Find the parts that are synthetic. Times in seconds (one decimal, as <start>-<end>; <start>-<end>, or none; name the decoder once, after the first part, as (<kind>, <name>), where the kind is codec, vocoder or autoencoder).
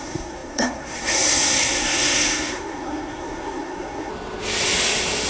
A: 0.0-4.1 (codec, SNAC)